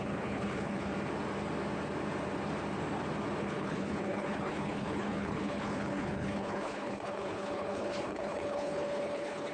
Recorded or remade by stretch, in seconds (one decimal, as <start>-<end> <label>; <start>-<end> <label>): 0.0-0.9 remade; 0.9-3.4 recorded; 3.4-9.5 remade